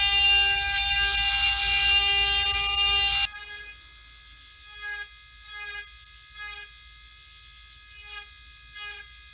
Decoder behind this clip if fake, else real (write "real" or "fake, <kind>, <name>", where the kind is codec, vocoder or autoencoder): real